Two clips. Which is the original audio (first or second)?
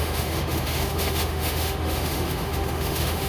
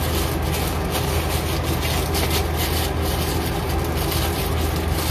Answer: second